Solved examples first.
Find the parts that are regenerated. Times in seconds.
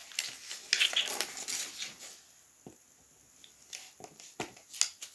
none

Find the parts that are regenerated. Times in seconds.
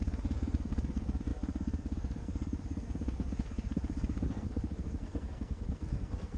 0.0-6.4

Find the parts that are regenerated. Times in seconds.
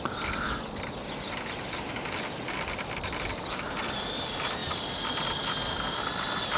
4.6-5.7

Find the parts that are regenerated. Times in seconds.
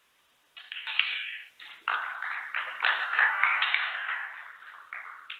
0.6-1.5; 3.0-4.3